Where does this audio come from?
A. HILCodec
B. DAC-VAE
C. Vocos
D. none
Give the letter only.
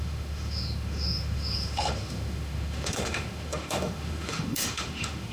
B